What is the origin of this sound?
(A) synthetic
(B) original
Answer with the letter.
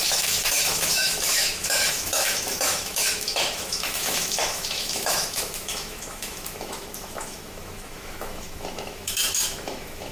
A